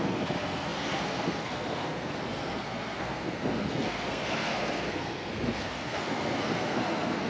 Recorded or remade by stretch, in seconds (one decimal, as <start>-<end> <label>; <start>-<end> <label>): 0.0-7.3 remade